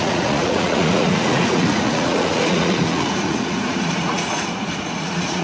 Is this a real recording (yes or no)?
no